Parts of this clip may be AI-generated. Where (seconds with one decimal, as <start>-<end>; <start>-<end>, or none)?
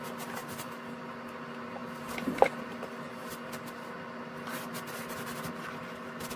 none